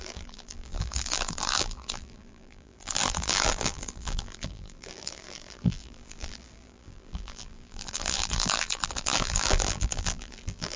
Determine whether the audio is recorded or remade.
remade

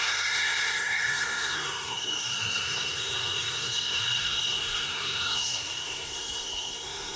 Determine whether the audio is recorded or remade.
remade